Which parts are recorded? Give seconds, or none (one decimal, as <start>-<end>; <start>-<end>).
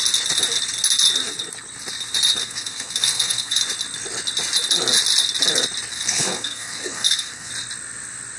0.0-2.4; 3.6-5.9; 7.5-8.4